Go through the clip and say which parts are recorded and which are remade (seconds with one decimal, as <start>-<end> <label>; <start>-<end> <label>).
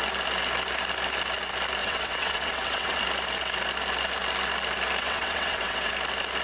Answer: 0.0-1.8 recorded; 1.8-3.0 remade; 3.0-5.0 recorded; 5.0-5.9 remade; 5.9-6.4 recorded